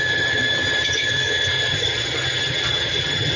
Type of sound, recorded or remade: remade